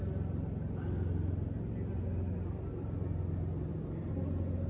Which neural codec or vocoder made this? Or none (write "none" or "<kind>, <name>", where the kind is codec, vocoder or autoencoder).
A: none